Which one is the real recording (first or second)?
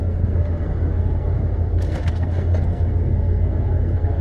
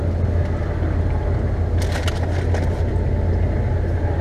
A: second